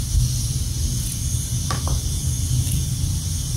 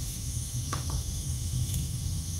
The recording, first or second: first